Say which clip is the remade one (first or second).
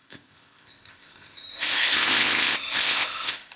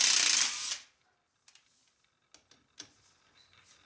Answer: first